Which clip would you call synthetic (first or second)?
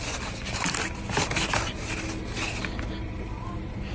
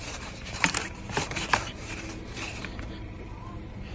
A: second